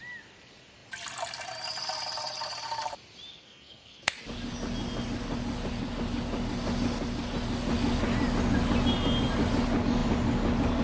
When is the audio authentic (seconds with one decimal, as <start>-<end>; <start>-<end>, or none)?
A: 0.0-3.3; 4.2-10.8